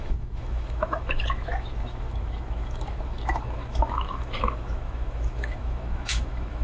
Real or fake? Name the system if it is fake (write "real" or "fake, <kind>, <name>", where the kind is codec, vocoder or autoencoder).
fake, autoencoder, DAC-VAE